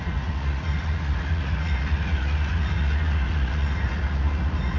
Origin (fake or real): fake